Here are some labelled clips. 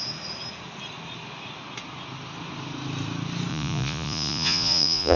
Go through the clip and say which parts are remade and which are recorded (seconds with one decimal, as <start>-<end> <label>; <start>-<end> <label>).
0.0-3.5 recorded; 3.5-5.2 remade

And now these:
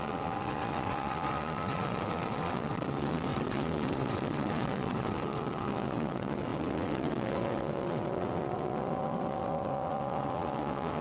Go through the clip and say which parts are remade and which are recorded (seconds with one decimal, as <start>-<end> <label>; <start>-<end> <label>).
0.0-11.0 remade

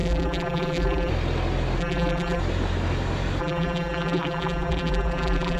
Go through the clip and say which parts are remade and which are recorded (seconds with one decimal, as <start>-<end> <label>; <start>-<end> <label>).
0.0-1.1 remade; 1.1-1.8 recorded; 1.8-2.4 remade; 2.4-3.4 recorded; 3.4-5.6 remade

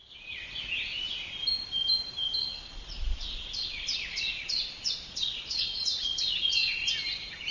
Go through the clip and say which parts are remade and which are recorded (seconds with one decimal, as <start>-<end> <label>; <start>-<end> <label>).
0.0-2.4 recorded; 2.4-6.9 remade; 6.9-7.5 recorded